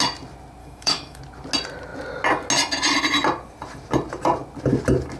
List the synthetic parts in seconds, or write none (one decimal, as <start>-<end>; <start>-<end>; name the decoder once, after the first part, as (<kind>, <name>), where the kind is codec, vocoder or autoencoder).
0.6-1.2 (autoencoder, DAC-VAE)